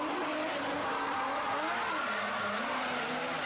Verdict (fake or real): real